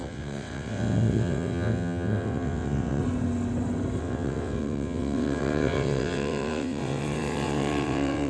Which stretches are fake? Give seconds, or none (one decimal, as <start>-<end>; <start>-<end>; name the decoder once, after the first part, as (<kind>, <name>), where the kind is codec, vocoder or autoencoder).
0.0-3.0 (vocoder, WaveNeXt); 4.0-8.3